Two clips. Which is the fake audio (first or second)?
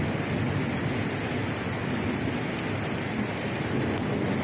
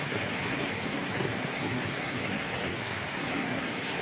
second